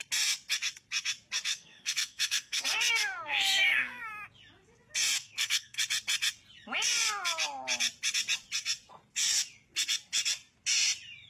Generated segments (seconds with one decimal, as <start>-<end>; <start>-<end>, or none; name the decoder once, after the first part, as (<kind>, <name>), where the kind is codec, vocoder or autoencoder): 1.5-4.1 (codec, SNAC); 5.2-5.8